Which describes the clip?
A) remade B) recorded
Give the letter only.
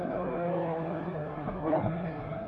A